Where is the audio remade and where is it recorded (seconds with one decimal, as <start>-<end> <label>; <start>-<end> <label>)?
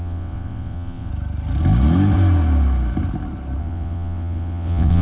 0.0-1.1 remade; 1.1-3.6 recorded; 3.6-5.0 remade